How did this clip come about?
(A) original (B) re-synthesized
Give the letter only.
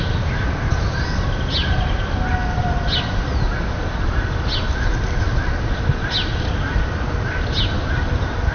A